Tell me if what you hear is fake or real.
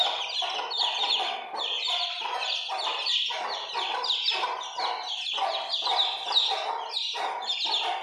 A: real